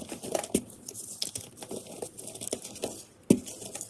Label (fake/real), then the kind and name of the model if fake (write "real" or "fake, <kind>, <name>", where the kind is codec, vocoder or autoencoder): real